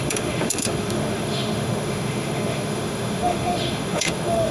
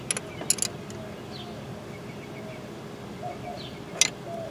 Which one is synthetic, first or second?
first